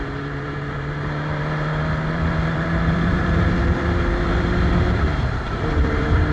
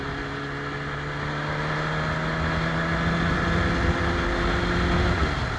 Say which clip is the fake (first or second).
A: first